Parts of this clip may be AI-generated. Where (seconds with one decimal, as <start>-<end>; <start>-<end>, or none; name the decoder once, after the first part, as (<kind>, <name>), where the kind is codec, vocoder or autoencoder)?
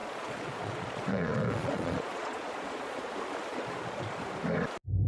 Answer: 0.0-3.1 (vocoder, Vocos); 3.5-4.2